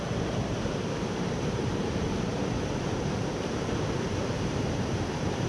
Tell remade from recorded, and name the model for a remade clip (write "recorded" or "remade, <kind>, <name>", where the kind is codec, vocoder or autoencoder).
remade, vocoder, BigVGAN v2